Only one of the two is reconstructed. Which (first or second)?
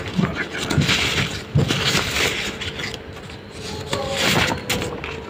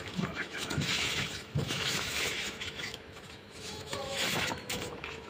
second